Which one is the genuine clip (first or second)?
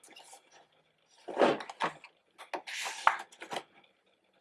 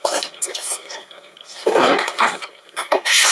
first